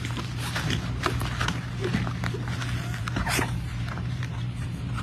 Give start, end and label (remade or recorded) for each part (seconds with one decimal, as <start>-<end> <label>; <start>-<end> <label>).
0.0-1.8 remade; 1.8-3.0 recorded; 3.0-5.0 remade